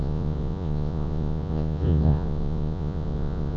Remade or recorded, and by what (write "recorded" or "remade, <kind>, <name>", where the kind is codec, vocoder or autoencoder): remade, vocoder, Vocos